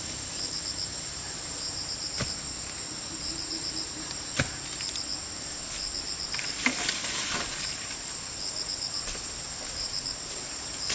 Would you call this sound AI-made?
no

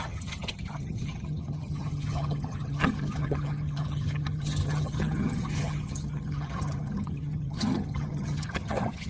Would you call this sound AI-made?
yes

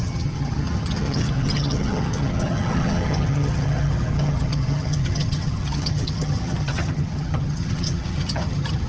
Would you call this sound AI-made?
yes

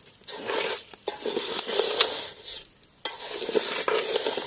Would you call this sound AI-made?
no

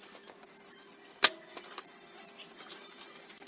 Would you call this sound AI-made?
no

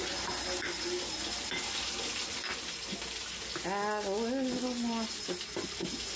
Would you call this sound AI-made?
no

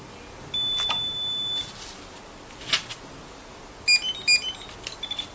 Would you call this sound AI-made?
no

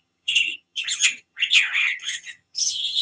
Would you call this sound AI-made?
yes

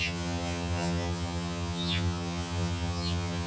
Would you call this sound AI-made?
yes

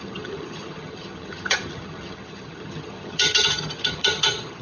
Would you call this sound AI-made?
yes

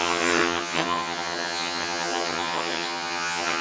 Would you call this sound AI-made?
yes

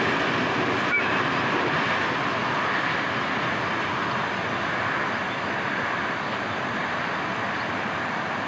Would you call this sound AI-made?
no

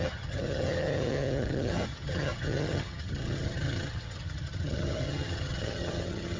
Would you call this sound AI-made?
yes